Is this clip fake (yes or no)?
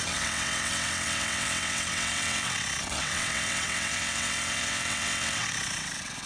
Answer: yes